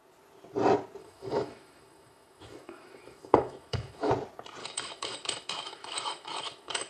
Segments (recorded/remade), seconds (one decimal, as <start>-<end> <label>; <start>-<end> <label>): 0.0-1.0 recorded; 1.0-4.1 remade; 4.1-4.6 recorded; 4.6-6.9 remade